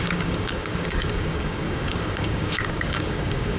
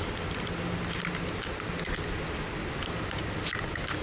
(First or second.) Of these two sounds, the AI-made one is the first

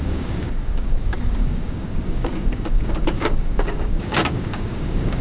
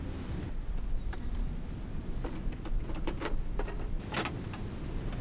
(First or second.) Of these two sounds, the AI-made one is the first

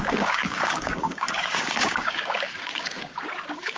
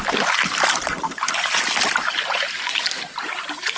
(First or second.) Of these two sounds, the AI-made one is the first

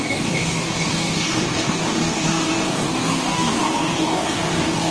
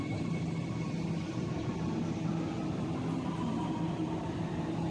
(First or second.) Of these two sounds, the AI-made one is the first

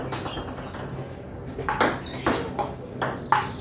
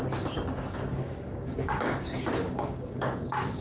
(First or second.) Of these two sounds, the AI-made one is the second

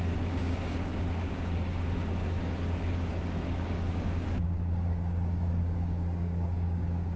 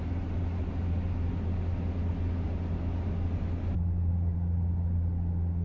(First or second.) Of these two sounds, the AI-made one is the first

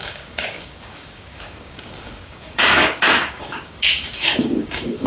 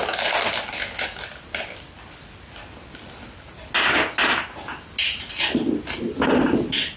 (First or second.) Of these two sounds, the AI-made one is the first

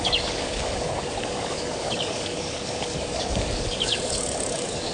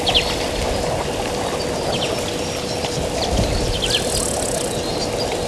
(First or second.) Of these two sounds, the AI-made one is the first